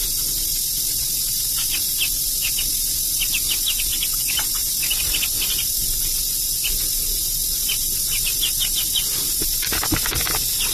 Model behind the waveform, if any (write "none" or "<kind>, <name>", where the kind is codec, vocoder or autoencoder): none